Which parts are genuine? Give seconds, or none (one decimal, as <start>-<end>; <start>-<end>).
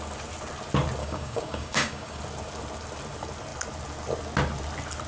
0.0-1.0; 2.2-5.1